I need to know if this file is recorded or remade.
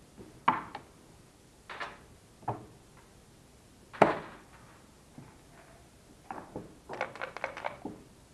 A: recorded